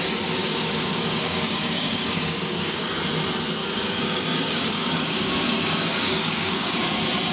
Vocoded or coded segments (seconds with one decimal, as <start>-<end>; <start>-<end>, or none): 0.4-2.8; 3.6-6.8

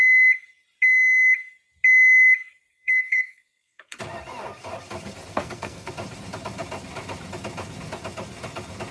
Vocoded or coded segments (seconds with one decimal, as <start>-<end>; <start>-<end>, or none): 2.7-4.0; 5.3-5.9

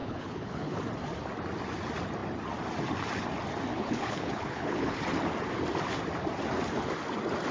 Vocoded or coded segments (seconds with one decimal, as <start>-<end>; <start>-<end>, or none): 0.0-0.8; 3.7-5.0

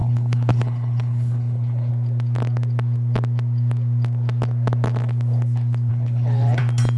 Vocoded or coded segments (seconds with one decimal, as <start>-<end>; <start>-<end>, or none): 0.0-1.9; 5.9-6.6

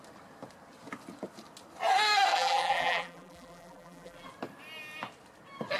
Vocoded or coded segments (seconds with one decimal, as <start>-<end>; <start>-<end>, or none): 2.3-4.3

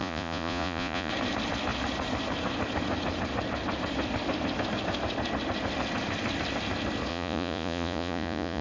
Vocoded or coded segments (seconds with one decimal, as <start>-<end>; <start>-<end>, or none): 0.0-1.1; 7.1-8.6